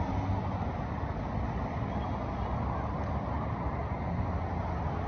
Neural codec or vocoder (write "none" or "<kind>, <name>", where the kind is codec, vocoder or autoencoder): none